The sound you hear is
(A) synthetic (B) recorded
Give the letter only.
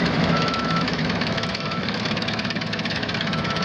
A